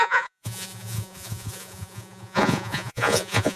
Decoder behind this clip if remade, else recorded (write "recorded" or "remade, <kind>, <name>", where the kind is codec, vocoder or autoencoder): remade, vocoder, Vocos